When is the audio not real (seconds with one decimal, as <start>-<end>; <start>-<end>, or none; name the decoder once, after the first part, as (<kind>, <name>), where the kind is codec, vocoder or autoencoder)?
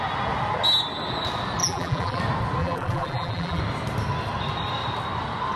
1.6-2.2 (vocoder, BigVGAN v2); 2.6-3.6